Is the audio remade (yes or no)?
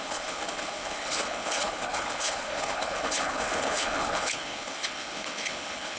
yes